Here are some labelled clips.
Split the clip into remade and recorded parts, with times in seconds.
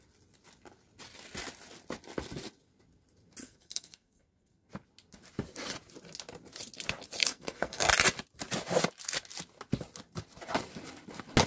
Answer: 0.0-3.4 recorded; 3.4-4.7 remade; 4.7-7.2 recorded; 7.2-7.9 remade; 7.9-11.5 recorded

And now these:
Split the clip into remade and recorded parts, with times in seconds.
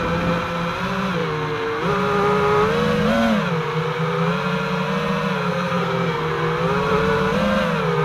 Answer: 0.0-5.5 recorded; 5.5-6.3 remade; 6.3-8.0 recorded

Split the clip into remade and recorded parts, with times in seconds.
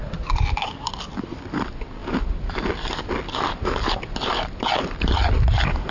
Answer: 0.0-5.9 recorded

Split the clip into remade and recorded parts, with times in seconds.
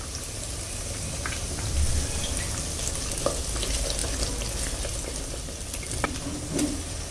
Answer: 0.0-7.1 recorded